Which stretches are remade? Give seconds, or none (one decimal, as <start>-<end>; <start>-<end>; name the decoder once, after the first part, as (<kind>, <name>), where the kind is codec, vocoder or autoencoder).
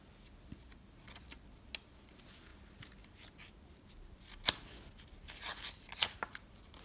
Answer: none